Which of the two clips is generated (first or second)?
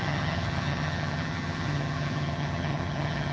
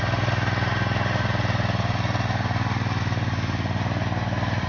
first